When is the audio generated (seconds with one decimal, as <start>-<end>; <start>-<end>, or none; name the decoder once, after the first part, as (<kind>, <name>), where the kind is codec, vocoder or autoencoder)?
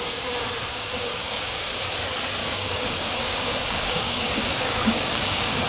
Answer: 0.7-1.7 (codec, DAC); 2.4-5.7